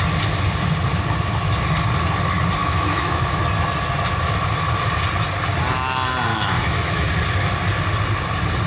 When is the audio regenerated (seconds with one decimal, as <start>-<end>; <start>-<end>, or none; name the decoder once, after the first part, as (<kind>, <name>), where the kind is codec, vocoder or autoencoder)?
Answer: 2.6-3.4 (autoencoder, DAC-VAE); 6.3-7.1